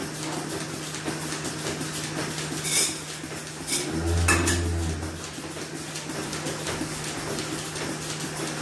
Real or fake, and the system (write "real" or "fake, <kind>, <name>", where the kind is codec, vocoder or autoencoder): real